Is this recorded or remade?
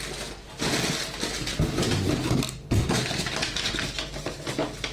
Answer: recorded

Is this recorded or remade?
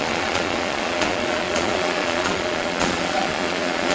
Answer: remade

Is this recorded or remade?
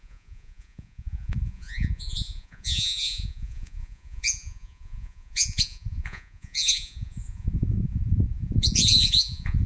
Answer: remade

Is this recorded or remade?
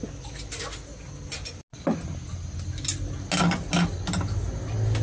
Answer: recorded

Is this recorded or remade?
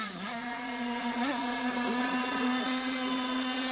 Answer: remade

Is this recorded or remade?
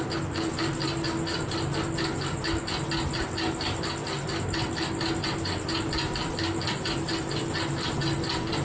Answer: recorded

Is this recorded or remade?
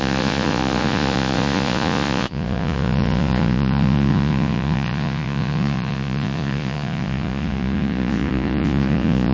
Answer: remade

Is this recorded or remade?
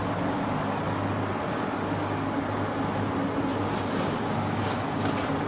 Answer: recorded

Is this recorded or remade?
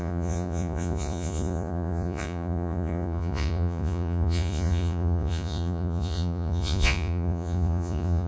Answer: remade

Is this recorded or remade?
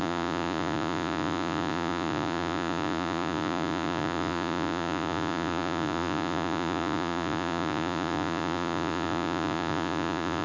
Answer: remade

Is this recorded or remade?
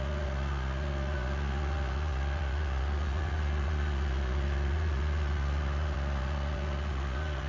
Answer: remade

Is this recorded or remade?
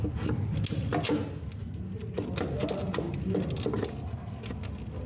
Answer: recorded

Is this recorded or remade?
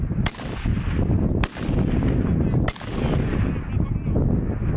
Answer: recorded